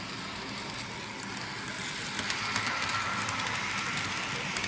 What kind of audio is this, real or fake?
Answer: real